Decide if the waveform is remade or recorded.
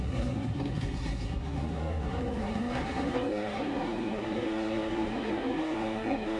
remade